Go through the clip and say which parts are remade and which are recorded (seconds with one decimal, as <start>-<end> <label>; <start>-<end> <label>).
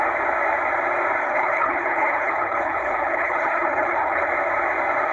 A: 0.0-1.2 recorded; 1.2-4.3 remade; 4.3-5.1 recorded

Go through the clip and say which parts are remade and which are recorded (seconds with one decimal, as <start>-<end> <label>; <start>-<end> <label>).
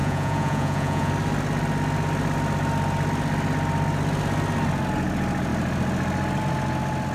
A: 0.0-1.1 remade; 1.1-7.1 recorded